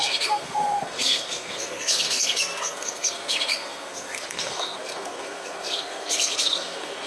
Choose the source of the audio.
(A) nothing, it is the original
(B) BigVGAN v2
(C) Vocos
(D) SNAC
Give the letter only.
D